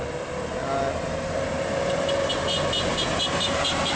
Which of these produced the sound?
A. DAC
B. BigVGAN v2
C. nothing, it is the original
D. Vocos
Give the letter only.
C